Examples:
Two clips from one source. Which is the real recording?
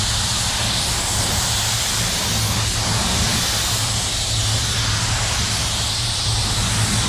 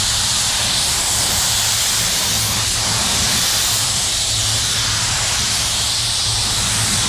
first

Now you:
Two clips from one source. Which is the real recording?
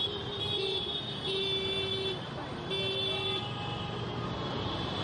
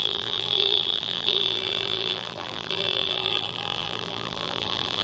first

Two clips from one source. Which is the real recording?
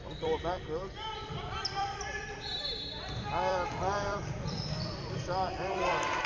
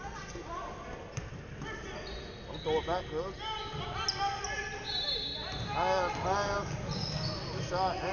second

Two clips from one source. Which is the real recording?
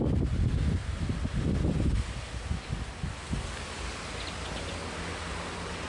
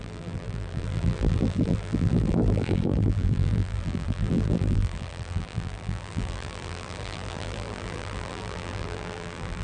first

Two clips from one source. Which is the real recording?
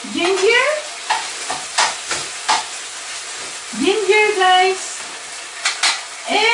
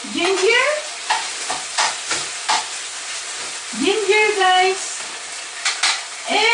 first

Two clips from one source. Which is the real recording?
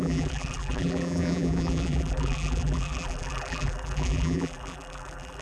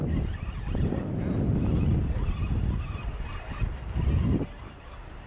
second